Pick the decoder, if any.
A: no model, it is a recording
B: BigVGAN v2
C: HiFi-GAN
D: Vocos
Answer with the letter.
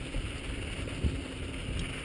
A